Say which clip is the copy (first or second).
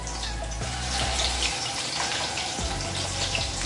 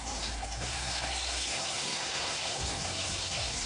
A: second